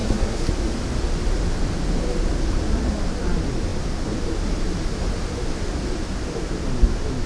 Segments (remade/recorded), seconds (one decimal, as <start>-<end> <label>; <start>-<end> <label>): 0.0-0.5 remade; 0.5-7.3 recorded